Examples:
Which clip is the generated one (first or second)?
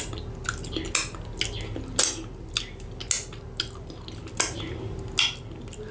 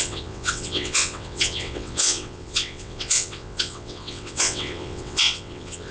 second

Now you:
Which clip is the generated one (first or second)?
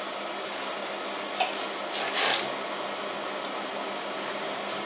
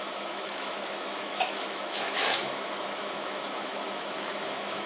second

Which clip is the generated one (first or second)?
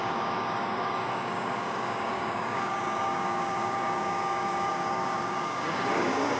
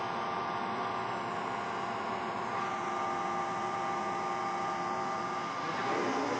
first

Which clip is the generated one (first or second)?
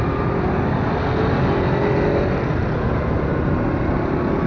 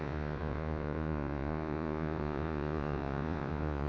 second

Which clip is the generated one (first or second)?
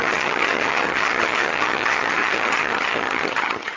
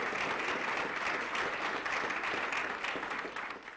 first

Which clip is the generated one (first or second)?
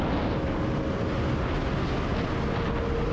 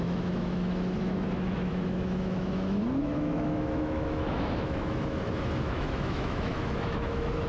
second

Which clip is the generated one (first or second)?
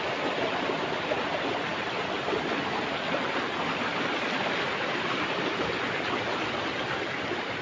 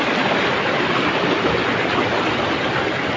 first